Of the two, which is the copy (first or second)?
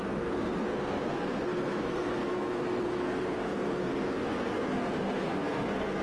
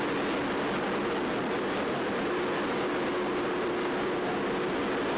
first